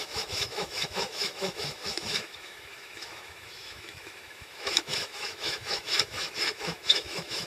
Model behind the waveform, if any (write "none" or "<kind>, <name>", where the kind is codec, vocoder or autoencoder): autoencoder, DAC-VAE